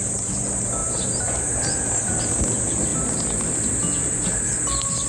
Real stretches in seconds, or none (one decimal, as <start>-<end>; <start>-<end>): 0.0-0.8; 2.2-2.9; 4.5-5.1

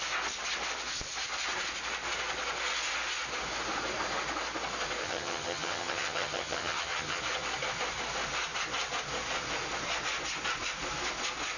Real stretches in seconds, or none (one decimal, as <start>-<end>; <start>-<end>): 0.0-5.0; 7.2-11.6

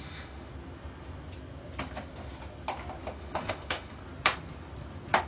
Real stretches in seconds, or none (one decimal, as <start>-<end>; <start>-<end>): 0.5-3.1; 4.0-5.3

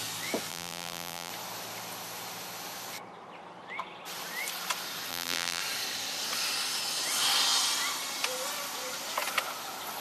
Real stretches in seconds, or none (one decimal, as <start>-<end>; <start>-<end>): 0.0-0.5; 1.3-5.1; 5.6-10.0

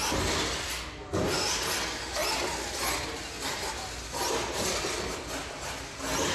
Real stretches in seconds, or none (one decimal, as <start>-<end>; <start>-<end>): 0.0-6.3

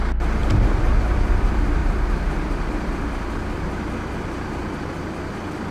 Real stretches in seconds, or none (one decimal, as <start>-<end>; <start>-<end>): 0.0-5.7

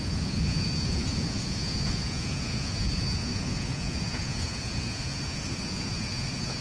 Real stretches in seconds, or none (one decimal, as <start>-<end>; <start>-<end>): none

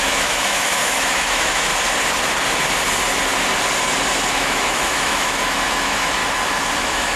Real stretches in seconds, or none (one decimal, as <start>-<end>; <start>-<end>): 1.7-4.3; 6.2-6.8